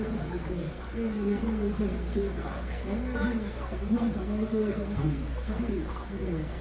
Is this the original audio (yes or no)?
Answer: no